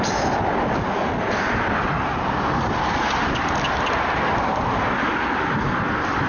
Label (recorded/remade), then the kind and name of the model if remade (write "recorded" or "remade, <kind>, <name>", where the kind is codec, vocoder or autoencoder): recorded